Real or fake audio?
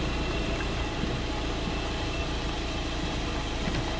real